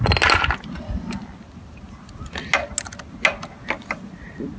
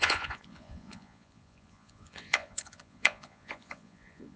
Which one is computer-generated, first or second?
second